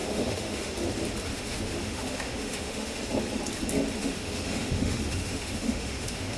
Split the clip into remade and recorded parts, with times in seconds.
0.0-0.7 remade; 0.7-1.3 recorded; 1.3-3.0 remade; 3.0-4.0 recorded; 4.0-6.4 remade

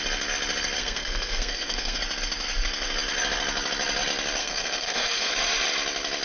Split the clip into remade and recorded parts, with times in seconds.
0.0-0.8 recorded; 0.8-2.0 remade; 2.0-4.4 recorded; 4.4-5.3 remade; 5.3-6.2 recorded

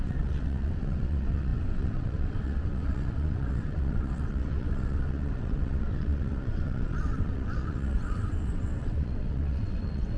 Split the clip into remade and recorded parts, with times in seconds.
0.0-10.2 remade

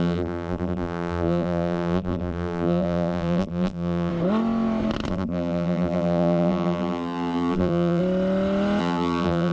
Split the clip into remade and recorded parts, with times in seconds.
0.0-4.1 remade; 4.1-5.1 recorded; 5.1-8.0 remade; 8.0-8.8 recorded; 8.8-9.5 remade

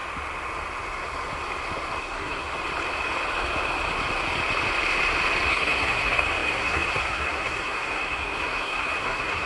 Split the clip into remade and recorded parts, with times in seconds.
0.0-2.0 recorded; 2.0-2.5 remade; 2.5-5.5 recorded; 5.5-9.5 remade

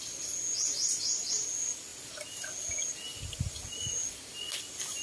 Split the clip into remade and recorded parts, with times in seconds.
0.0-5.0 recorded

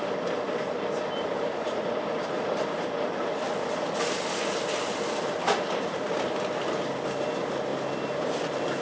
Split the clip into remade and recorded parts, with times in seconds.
0.0-8.8 recorded

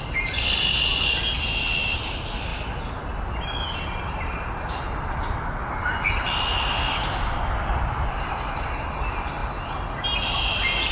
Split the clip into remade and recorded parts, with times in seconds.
0.0-10.9 recorded